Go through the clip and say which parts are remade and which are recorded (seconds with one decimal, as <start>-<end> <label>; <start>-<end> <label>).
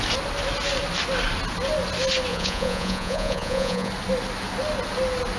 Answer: 0.0-2.3 recorded; 2.3-3.9 remade; 3.9-5.4 recorded